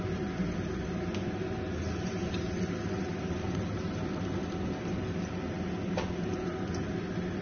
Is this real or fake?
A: real